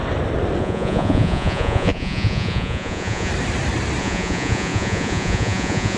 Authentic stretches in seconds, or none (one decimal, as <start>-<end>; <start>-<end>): 0.0-0.6; 3.3-4.0